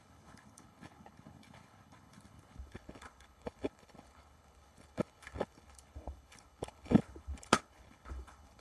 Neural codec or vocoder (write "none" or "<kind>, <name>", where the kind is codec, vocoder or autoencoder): codec, HILCodec